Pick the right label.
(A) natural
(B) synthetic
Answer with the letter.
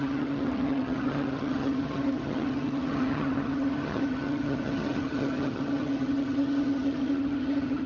B